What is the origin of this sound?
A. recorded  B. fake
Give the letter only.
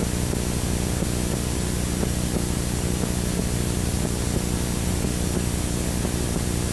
A